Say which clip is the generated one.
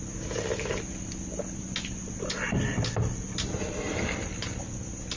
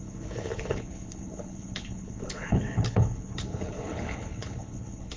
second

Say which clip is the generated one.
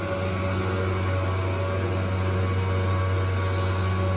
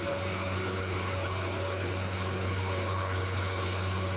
second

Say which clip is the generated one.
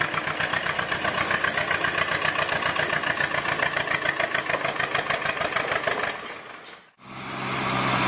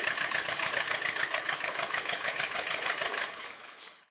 second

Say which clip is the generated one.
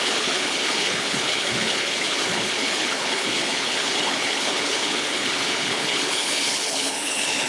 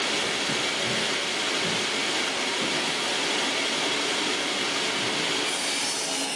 first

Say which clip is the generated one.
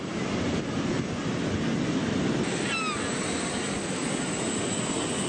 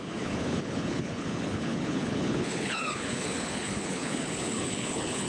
second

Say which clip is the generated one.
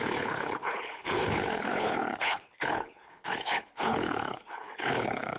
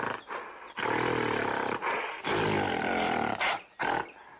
first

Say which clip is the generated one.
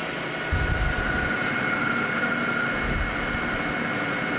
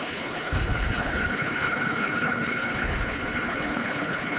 second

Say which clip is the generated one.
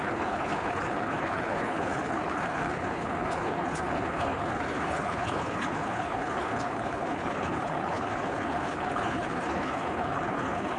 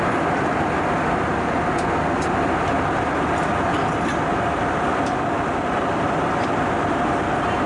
first